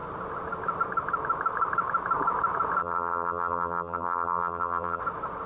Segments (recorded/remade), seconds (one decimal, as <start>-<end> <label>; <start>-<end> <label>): 0.0-2.8 recorded; 2.8-5.0 remade; 5.0-5.5 recorded